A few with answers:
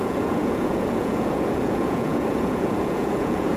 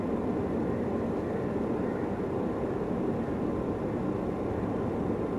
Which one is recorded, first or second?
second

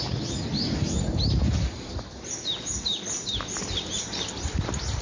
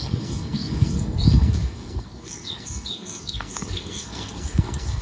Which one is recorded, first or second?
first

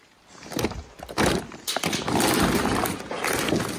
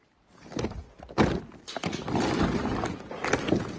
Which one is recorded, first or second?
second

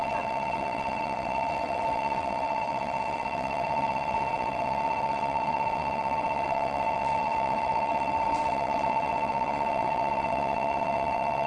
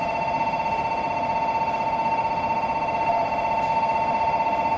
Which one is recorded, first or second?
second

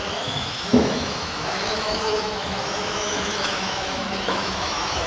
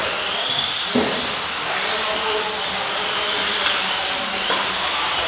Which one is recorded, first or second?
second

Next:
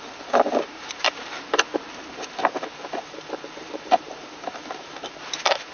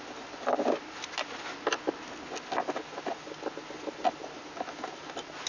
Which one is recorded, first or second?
second